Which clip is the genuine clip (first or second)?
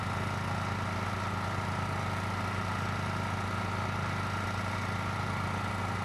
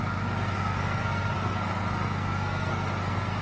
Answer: first